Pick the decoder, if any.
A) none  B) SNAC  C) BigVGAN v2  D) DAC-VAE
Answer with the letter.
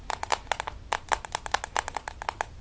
A